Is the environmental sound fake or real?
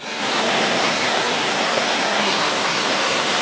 fake